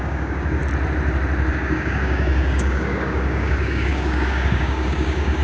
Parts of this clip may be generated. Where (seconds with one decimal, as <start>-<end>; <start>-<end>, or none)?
0.0-0.6; 1.5-5.4